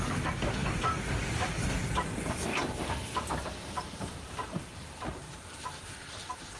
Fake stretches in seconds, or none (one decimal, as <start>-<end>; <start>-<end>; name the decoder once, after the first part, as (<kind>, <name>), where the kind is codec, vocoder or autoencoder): 0.6-1.8 (vocoder, BigVGAN v2); 2.5-6.6